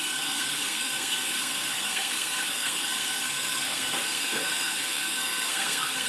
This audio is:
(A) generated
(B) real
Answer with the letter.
A